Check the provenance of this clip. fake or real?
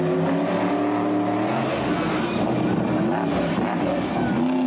real